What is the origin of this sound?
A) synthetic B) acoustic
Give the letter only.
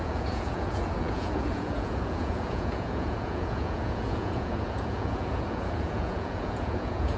A